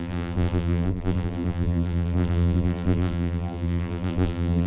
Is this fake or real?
fake